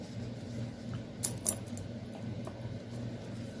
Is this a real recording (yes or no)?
yes